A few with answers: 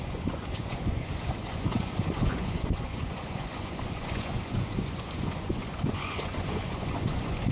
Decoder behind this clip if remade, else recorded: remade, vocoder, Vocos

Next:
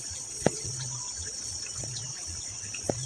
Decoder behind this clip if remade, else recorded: remade, vocoder, Vocos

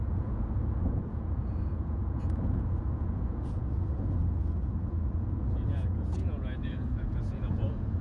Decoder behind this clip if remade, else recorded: remade, vocoder, Vocos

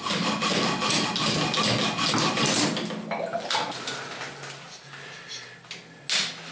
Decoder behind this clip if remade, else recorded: recorded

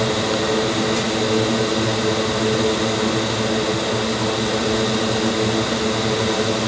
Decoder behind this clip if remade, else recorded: recorded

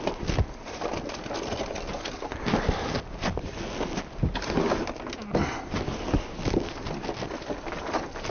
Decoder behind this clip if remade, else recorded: recorded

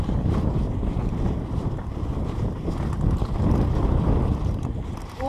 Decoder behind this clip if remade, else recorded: recorded